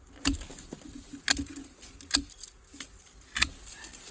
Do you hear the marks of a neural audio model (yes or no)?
no